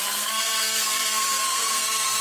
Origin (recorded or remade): remade